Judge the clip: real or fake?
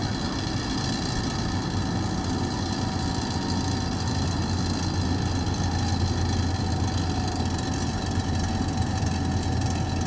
real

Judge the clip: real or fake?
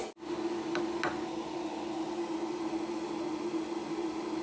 real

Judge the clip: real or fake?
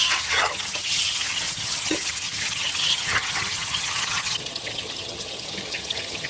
fake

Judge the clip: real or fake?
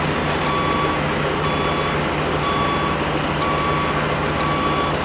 real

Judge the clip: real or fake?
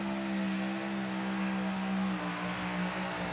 real